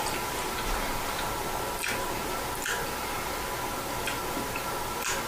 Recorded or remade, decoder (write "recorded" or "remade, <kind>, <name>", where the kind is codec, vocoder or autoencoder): recorded